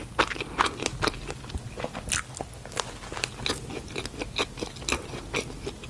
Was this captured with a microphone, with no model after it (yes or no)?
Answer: yes